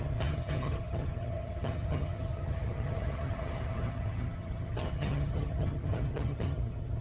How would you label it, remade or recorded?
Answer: remade